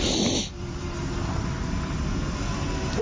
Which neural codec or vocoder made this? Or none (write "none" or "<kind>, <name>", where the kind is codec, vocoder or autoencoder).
none